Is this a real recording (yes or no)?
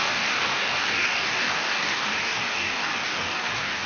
no